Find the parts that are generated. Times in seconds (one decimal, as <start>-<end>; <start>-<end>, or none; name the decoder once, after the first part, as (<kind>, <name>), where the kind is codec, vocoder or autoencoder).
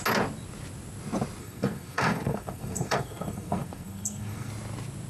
1.4-4.5 (codec, SNAC)